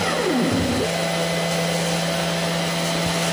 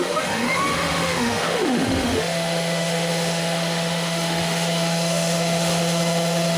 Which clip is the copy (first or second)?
second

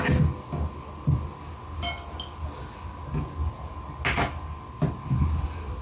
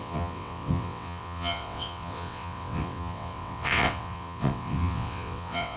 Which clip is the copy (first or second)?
second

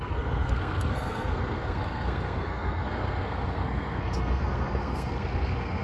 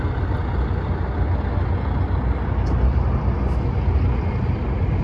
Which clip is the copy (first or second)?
first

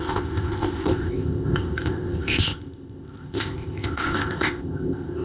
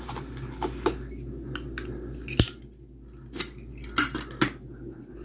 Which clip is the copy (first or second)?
first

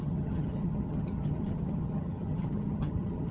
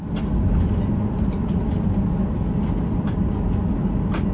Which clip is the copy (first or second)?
first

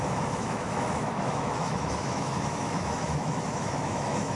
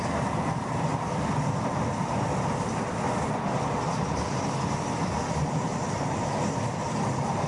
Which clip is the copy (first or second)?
first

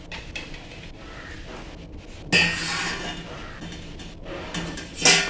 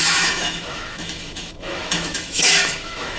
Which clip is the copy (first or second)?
second